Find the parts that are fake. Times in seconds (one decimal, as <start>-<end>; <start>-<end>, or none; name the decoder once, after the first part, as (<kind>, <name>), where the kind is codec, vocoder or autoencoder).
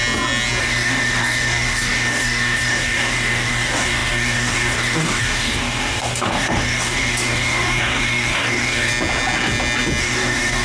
0.6-8.9 (codec, DAC); 10.0-10.6